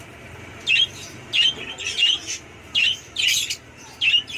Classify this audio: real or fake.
fake